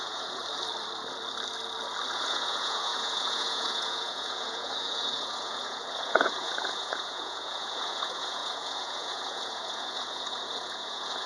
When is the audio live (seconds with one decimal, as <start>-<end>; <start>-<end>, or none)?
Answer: 0.4-2.1